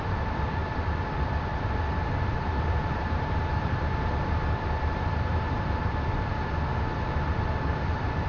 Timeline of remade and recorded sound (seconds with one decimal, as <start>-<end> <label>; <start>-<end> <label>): 0.0-6.3 remade; 6.3-7.7 recorded; 7.7-8.3 remade